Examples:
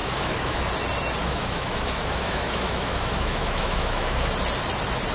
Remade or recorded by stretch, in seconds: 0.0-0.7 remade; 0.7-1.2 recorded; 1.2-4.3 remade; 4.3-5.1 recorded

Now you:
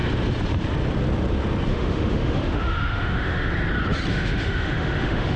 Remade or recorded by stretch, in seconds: 0.0-1.7 recorded; 1.7-3.5 remade; 3.5-4.1 recorded; 4.1-5.4 remade

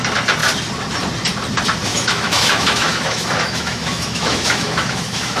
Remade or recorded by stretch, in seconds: 0.0-1.9 recorded; 1.9-5.4 remade

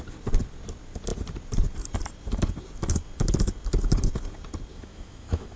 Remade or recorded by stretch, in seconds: 0.0-4.7 recorded; 4.7-5.6 remade

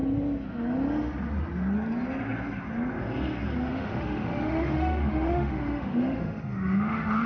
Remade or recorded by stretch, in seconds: 0.0-3.7 recorded; 3.7-7.3 remade